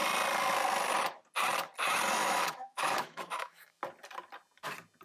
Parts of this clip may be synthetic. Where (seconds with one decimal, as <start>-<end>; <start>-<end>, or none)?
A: 2.2-3.8